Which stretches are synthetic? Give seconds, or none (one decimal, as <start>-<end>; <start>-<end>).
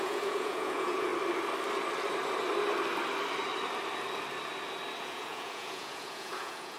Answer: 0.0-1.1; 5.0-6.8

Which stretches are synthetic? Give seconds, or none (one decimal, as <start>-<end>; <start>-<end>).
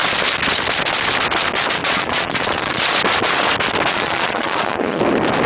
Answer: 1.8-2.8; 3.9-5.0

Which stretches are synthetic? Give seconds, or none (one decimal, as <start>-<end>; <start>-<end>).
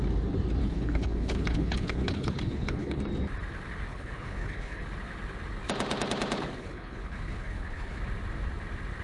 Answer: 0.6-3.0; 3.9-4.8; 6.6-8.0